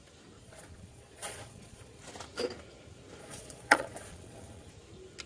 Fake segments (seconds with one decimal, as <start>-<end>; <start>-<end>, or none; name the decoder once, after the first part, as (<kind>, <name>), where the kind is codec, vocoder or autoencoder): 0.4-2.0 (vocoder, Vocos); 3.2-4.7